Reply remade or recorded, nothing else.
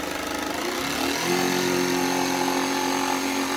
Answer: recorded